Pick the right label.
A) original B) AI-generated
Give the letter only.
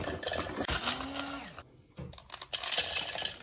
A